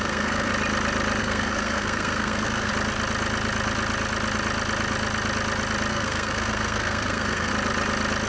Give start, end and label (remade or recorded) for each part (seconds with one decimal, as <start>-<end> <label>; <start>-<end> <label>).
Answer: 0.0-0.5 remade; 0.5-1.2 recorded; 1.2-2.7 remade; 2.7-5.9 recorded; 5.9-7.5 remade; 7.5-8.3 recorded